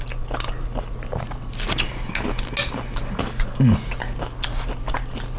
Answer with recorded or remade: recorded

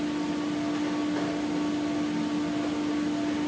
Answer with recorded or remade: recorded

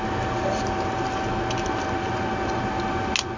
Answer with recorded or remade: recorded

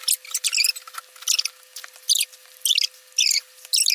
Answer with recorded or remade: recorded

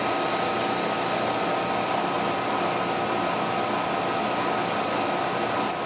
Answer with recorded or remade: recorded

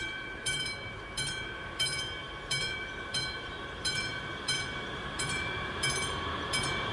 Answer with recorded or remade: remade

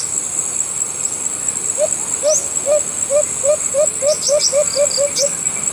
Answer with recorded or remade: recorded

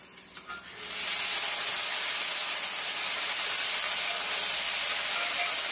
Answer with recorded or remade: recorded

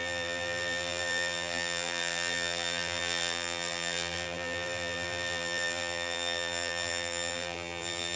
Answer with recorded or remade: remade